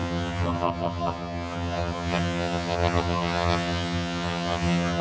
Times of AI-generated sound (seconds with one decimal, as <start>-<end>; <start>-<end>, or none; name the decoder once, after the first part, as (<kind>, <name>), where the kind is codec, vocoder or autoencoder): 0.0-5.0 (vocoder, HiFi-GAN)